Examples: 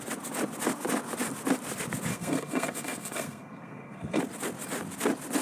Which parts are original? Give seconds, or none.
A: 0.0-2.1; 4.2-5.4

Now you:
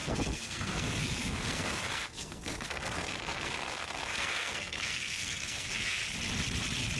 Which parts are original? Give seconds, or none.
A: 6.0-7.0

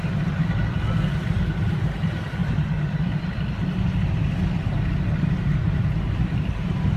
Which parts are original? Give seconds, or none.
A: 0.0-7.0

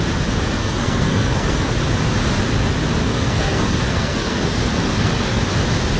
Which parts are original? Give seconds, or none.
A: 0.0-0.6; 1.7-3.0; 5.4-6.0

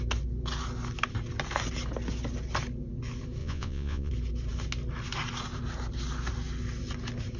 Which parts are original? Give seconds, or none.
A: 0.0-3.4; 4.1-7.4

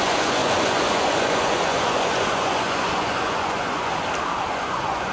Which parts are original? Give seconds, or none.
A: 3.9-4.5

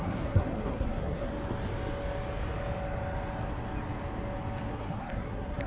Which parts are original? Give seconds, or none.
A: 1.3-4.7

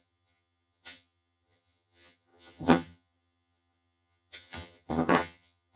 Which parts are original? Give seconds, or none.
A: none